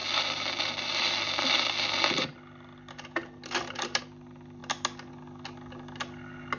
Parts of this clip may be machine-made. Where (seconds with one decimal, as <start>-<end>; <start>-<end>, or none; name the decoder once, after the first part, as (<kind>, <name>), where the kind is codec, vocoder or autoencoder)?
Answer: none